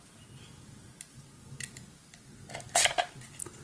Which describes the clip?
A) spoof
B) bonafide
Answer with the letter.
B